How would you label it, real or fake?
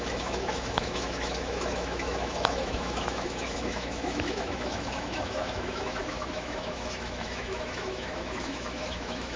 fake